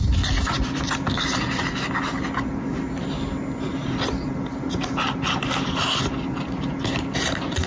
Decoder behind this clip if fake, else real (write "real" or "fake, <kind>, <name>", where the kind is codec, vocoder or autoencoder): real